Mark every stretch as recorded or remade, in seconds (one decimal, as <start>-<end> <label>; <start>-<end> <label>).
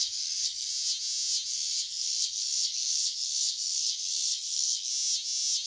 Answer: 0.0-0.7 remade; 0.7-1.5 recorded; 1.5-4.9 remade; 4.9-5.7 recorded